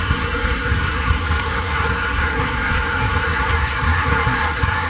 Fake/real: fake